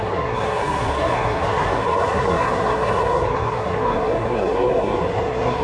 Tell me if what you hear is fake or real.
fake